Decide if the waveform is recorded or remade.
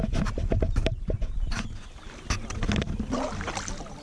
recorded